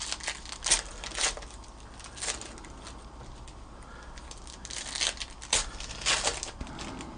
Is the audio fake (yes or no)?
no